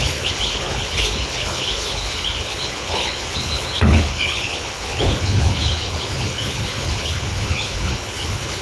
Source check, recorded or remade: remade